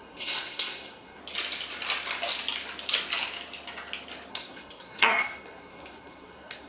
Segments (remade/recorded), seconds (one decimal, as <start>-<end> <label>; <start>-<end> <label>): 0.0-1.2 remade; 1.2-4.3 recorded; 4.3-6.7 remade